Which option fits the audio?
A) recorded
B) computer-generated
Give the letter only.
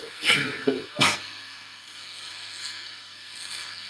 B